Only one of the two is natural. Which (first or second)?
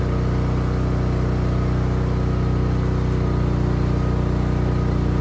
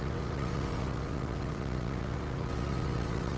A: first